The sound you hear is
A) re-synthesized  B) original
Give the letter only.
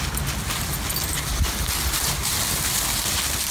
B